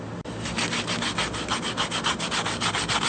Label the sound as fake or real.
real